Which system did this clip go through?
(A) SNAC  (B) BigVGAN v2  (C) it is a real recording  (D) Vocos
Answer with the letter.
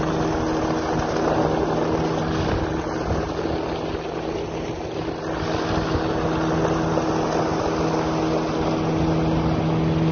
C